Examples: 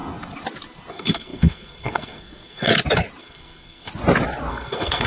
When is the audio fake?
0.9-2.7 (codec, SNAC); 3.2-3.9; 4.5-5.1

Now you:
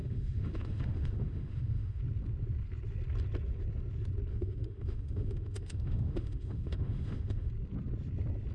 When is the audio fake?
0.0-2.0 (autoencoder, DAC-VAE); 4.3-7.5

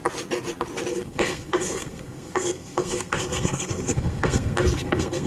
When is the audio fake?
0.9-5.3 (codec, SNAC)

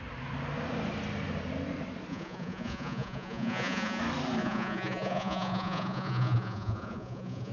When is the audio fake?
2.1-4.0 (vocoder, Vocos); 4.4-7.5

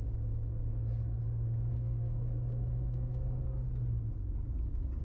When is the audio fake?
0.7-1.2 (codec, SNAC); 1.7-3.4

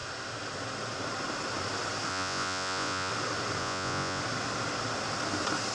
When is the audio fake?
2.1-3.1 (vocoder, Vocos); 3.6-4.2

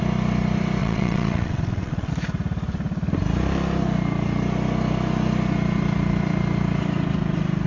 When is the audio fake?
0.8-2.1 (vocoder, WaveNeXt)